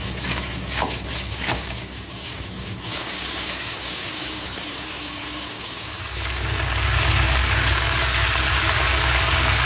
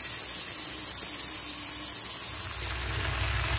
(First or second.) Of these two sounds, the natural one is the second